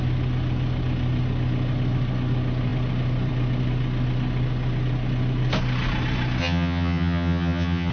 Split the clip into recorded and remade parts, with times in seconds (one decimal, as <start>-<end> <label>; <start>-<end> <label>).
0.0-6.4 recorded; 6.4-7.9 remade